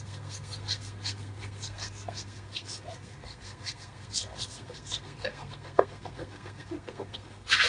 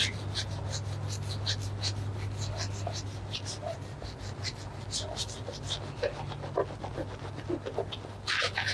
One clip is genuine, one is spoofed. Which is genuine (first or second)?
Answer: second